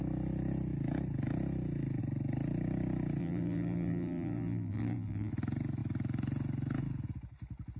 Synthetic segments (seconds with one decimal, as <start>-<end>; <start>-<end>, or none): 3.2-5.3